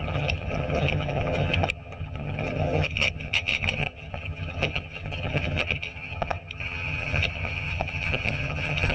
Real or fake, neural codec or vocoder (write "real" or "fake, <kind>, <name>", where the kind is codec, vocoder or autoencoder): fake, vocoder, HiFi-GAN